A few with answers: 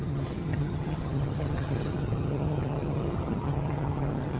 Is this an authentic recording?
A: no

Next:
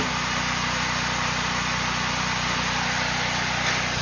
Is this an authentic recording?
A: yes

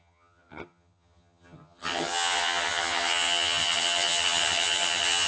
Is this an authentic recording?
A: no